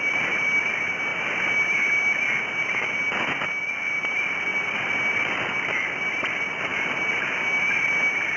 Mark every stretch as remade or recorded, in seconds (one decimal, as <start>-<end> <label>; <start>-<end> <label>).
0.0-8.4 recorded